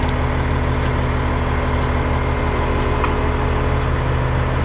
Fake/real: real